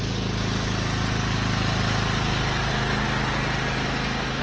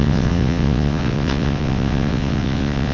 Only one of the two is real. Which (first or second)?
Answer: first